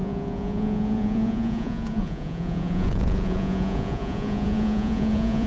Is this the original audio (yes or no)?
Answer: no